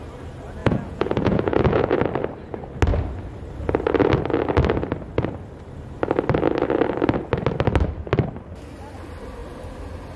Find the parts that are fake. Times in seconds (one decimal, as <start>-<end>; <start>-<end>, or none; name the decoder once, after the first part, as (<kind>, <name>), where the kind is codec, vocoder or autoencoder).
0.6-2.0 (vocoder, Vocos)